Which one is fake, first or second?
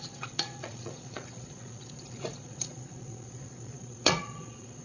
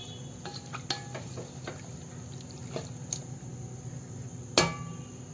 first